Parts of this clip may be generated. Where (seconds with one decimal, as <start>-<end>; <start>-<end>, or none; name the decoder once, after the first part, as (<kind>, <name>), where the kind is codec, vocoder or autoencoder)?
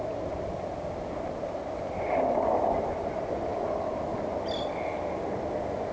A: none